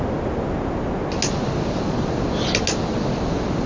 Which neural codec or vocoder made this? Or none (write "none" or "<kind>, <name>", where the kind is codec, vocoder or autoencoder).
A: none